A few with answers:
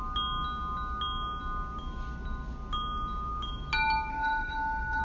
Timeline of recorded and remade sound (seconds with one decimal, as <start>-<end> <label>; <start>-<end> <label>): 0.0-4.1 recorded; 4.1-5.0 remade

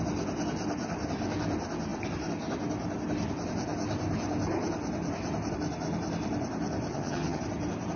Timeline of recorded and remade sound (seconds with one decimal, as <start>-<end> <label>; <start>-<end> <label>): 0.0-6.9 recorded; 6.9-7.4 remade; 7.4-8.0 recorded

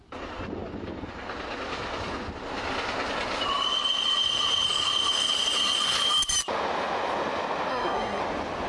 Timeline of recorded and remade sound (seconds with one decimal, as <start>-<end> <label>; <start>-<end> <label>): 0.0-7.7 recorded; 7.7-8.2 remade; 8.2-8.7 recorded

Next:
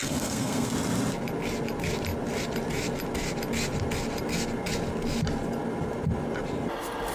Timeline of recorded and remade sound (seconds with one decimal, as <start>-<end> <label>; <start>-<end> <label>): 0.0-0.7 remade; 0.7-7.1 recorded

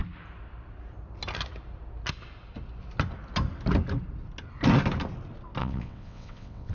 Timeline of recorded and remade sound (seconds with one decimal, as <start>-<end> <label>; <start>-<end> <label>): 0.0-5.6 recorded; 5.6-6.7 remade

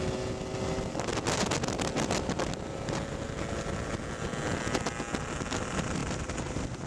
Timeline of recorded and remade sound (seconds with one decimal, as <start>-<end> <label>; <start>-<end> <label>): 0.0-6.9 recorded